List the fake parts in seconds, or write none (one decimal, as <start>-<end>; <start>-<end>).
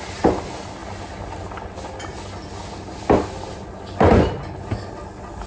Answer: none